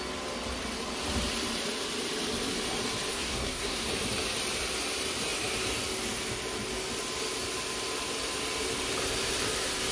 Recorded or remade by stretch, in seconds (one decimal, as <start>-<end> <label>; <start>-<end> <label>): 0.0-3.1 recorded; 3.1-3.9 remade; 3.9-9.9 recorded